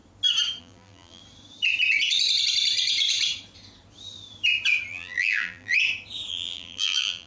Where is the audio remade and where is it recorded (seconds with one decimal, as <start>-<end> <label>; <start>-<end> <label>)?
0.0-0.6 recorded; 0.6-1.2 remade; 1.2-4.9 recorded; 4.9-5.7 remade; 5.7-6.3 recorded; 6.3-7.3 remade